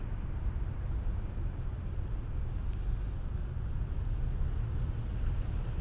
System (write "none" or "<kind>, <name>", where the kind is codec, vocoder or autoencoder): none